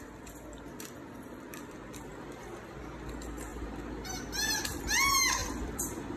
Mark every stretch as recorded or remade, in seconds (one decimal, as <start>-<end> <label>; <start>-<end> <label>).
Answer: 0.0-2.1 recorded; 2.1-2.8 remade; 2.8-3.5 recorded; 3.5-4.8 remade; 4.8-5.4 recorded; 5.4-6.2 remade